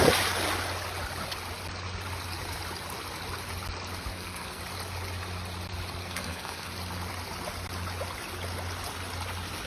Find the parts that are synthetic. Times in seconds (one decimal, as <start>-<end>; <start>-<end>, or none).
4.1-4.6; 6.0-6.7